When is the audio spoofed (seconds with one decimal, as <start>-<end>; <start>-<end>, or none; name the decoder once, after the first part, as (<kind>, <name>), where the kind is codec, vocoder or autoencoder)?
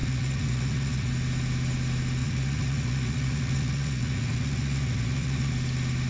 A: 0.0-1.1 (vocoder, Vocos); 2.2-5.5